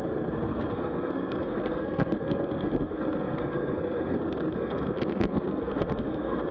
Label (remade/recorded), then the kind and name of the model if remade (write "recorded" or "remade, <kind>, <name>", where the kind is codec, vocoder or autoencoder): remade, codec, SNAC